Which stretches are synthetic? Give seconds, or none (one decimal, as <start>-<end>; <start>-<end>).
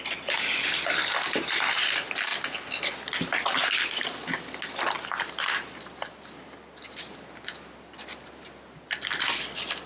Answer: none